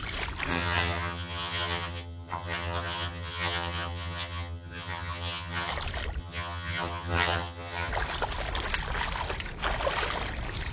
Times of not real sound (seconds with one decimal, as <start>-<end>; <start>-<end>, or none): 0.5-5.7; 6.2-7.9